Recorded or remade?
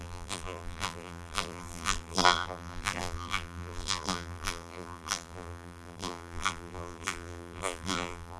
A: remade